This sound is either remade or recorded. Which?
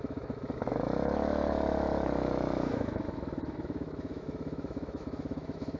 remade